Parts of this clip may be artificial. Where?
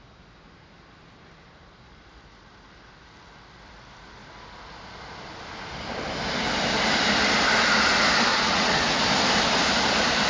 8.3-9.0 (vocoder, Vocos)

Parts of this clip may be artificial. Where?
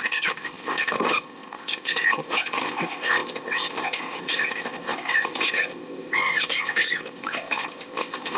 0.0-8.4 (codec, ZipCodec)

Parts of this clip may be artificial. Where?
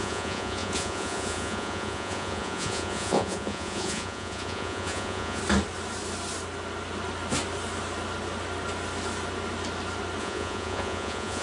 0.0-5.4 (vocoder, Vocos); 10.2-11.4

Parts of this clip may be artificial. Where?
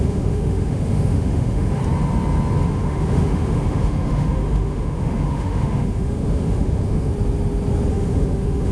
0.0-1.8 (autoencoder, DAC-VAE); 2.7-7.1; 7.9-8.7